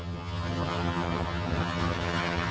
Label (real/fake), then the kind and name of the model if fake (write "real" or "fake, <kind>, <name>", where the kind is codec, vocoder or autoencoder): fake, vocoder, HiFi-GAN